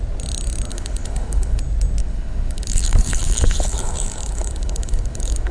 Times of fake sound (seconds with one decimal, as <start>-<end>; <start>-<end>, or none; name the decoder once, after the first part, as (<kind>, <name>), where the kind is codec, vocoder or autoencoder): 0.7-1.6 (codec, HILCodec); 2.0-5.5